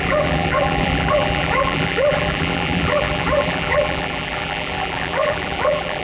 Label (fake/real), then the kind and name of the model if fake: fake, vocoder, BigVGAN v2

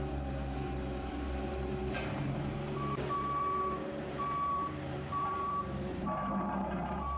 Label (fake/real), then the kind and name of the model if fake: fake, vocoder, BigVGAN v2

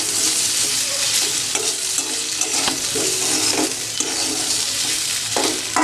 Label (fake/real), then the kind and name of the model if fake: real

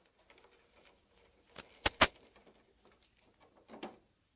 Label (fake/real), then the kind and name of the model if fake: real